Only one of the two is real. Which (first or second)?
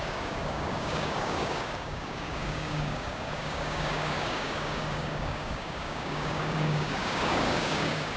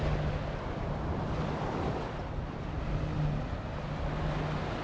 second